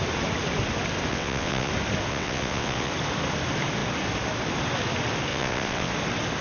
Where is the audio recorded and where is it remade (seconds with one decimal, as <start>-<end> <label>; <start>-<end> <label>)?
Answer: 0.0-1.1 recorded; 1.1-1.7 remade; 1.7-2.1 recorded; 2.1-2.9 remade; 2.9-5.3 recorded; 5.3-5.9 remade; 5.9-6.4 recorded